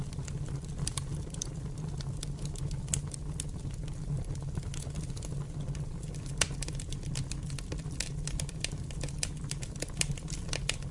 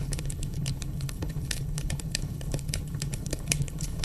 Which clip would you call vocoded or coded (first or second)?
second